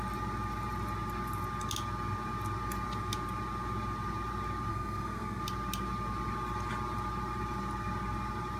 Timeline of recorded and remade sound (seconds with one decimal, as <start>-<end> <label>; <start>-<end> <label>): 0.0-4.7 recorded; 4.7-5.4 remade; 5.4-8.6 recorded